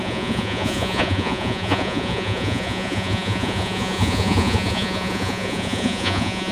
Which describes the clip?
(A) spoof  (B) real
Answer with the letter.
A